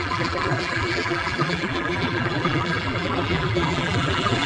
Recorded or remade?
remade